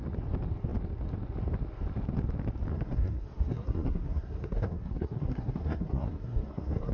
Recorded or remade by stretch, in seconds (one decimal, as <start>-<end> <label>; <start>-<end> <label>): 0.0-2.7 recorded; 2.7-6.9 remade